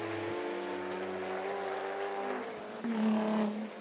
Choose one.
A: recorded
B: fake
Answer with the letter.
A